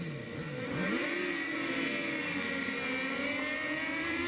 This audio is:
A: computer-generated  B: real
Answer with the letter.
B